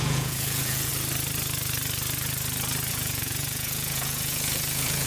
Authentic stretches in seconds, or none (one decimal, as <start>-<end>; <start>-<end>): 0.9-2.9